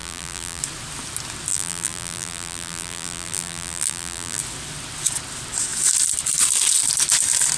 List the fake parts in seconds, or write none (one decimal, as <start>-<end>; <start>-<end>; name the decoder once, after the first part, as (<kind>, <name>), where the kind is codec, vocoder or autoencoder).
0.0-0.6 (vocoder, BigVGAN v2); 1.5-4.4